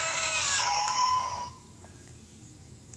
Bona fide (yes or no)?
no